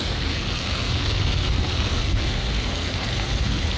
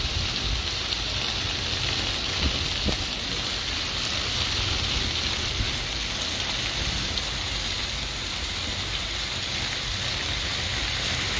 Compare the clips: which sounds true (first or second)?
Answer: second